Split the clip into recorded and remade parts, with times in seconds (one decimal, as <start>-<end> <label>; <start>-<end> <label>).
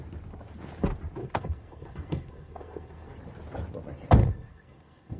0.0-1.2 recorded; 1.2-3.2 remade; 3.2-4.2 recorded; 4.2-5.2 remade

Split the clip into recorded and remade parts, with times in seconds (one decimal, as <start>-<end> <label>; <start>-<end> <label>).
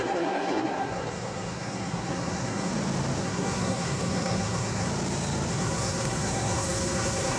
0.0-2.7 remade; 2.7-3.2 recorded; 3.2-4.9 remade; 4.9-5.5 recorded; 5.5-7.4 remade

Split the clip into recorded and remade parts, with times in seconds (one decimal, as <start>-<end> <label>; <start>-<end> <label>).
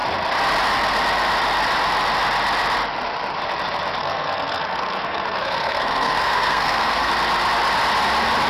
0.0-4.0 recorded; 4.0-7.1 remade; 7.1-8.5 recorded